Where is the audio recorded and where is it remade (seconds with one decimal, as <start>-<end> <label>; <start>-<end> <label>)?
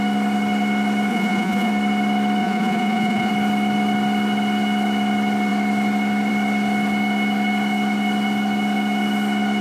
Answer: 0.0-1.1 recorded; 1.1-1.7 remade; 1.7-2.4 recorded; 2.4-3.3 remade; 3.3-9.6 recorded